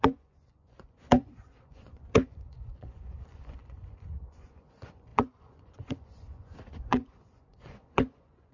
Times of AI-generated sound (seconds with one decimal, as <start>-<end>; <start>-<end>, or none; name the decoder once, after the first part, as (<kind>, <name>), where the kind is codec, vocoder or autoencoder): 0.0-8.5 (vocoder, Vocos)